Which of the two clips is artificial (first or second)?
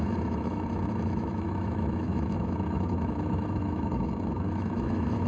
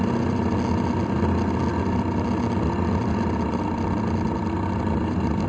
first